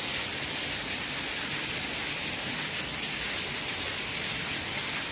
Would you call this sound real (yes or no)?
no